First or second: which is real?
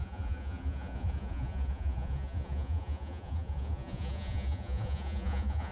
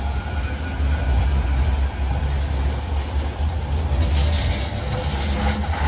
second